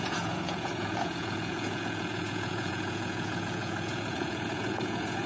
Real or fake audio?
fake